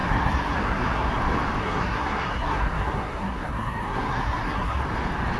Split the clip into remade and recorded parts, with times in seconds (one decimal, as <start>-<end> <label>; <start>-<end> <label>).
0.0-1.2 remade; 1.2-1.6 recorded; 1.6-4.8 remade; 4.8-5.4 recorded